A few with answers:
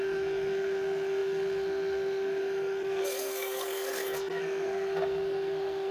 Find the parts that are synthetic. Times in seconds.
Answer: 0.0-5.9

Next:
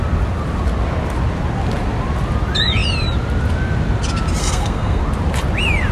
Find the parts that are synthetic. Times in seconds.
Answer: 4.4-5.0